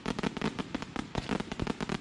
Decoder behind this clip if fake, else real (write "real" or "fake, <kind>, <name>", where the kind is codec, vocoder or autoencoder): real